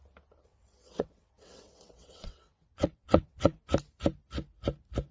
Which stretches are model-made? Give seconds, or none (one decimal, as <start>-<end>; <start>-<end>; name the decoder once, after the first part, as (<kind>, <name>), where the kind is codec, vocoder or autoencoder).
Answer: 0.5-3.6 (vocoder, WaveNeXt)